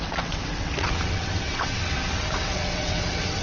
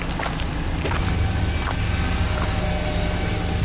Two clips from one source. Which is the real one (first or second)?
second